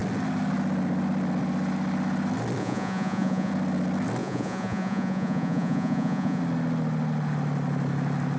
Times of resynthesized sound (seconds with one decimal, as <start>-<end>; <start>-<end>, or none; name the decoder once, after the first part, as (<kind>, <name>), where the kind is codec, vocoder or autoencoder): 2.6-3.5 (vocoder, Vocos); 4.2-6.4